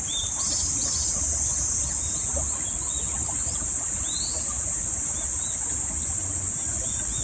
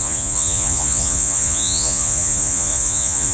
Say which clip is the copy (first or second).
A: second